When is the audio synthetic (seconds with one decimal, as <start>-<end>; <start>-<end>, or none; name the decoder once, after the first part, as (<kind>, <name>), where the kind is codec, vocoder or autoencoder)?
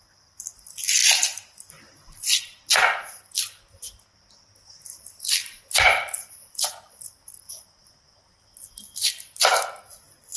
1.0-2.7 (vocoder, BigVGAN v2); 5.4-9.4